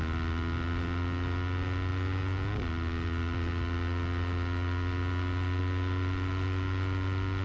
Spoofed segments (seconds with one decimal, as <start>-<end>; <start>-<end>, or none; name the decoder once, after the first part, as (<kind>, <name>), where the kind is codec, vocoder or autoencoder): none